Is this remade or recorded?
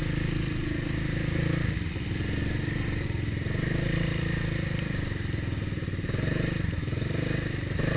recorded